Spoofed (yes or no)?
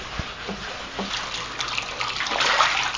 no